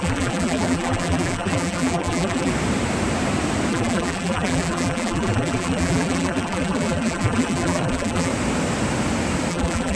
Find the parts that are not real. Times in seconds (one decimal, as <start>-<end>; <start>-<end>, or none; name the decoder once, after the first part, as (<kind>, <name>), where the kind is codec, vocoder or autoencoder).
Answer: 0.0-2.5 (vocoder, BigVGAN v2); 3.7-8.3; 9.5-10.0